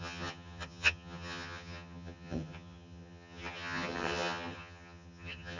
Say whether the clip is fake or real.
fake